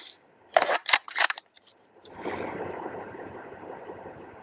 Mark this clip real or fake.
fake